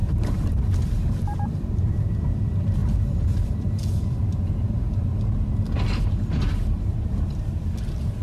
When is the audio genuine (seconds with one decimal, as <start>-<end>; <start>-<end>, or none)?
1.8-2.8; 5.1-8.2